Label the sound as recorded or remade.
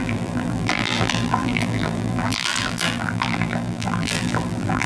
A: remade